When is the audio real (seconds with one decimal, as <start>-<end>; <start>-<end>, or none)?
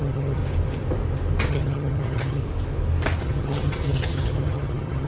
0.4-1.5; 2.4-3.2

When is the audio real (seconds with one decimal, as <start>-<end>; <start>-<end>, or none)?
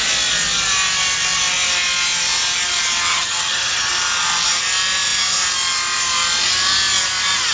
0.0-3.1; 3.9-7.5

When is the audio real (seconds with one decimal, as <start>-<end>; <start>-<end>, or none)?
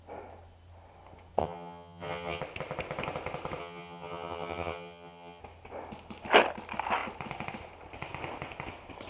0.0-1.4; 2.4-3.6; 5.4-9.1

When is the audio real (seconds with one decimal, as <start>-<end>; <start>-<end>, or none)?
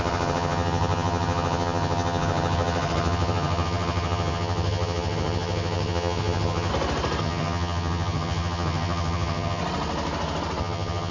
6.7-7.2; 9.6-10.6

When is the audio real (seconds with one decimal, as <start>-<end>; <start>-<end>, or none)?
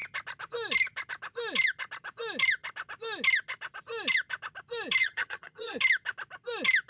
0.0-5.0; 5.8-6.9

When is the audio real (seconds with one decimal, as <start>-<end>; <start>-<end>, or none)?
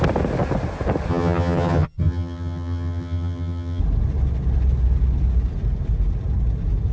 0.0-1.1; 3.8-6.9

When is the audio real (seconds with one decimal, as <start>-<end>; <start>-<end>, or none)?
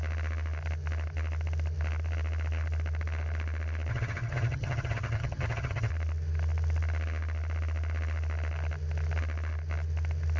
0.0-3.9; 5.9-10.4